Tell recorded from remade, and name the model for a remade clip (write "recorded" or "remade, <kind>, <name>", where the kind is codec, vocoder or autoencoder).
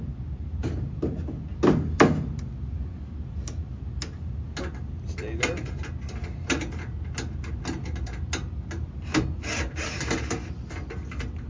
recorded